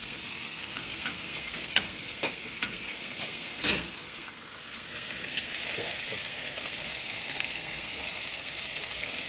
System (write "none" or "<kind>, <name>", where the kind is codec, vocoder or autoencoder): codec, SNAC